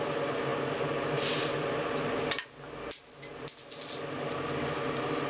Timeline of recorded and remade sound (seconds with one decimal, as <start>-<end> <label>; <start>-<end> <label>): 0.0-5.3 recorded